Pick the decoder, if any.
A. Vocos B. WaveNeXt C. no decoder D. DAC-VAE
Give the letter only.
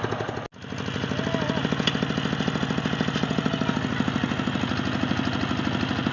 C